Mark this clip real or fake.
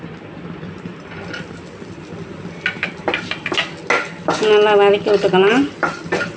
real